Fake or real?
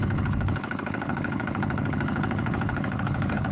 fake